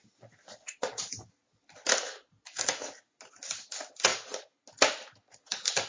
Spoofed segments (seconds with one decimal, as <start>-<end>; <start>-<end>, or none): none